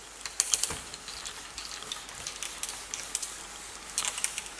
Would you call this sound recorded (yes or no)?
yes